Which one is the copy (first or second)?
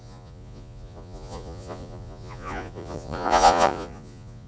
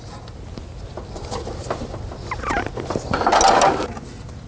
first